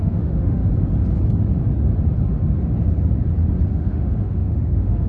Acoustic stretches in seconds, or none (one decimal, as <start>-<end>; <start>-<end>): 0.6-3.7